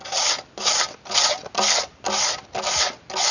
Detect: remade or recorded recorded